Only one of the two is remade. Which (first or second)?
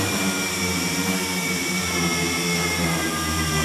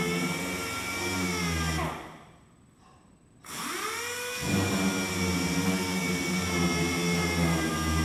first